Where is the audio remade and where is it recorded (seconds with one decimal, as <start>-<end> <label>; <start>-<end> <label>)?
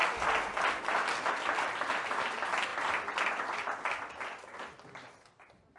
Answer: 0.0-5.8 recorded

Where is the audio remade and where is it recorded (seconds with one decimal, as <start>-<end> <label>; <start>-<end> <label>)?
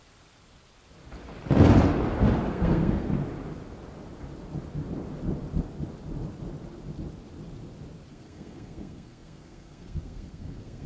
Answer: 0.0-2.5 recorded; 2.5-3.1 remade; 3.1-8.1 recorded; 8.1-10.9 remade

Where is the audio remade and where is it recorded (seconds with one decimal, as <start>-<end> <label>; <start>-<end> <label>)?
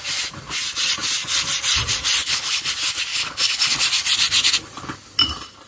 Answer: 0.0-2.2 recorded; 2.2-2.7 remade; 2.7-3.1 recorded; 3.1-3.7 remade; 3.7-5.7 recorded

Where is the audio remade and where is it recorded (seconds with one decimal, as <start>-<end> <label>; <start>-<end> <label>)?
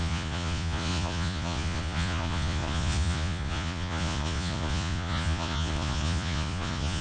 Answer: 0.0-7.0 remade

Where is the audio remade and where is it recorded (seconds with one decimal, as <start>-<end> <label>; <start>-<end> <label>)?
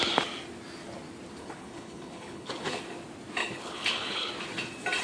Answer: 0.0-1.4 recorded; 1.4-2.8 remade; 2.8-3.4 recorded; 3.4-4.3 remade; 4.3-5.0 recorded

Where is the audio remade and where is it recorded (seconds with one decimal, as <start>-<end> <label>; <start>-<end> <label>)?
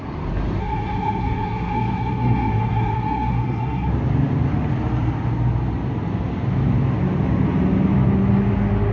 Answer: 0.0-0.6 recorded; 0.6-3.9 remade; 3.9-8.9 recorded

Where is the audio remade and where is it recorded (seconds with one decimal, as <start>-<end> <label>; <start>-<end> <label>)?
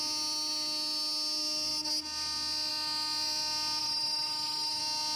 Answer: 0.0-3.8 recorded; 3.8-4.8 remade; 4.8-5.2 recorded